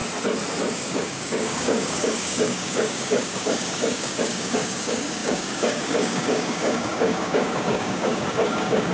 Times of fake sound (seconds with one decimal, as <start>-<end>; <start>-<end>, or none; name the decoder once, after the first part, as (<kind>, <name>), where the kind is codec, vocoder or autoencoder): 0.7-8.9 (codec, DAC)